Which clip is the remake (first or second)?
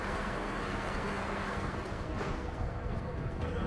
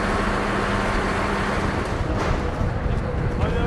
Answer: first